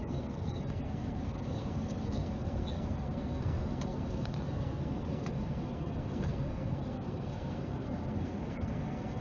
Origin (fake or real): fake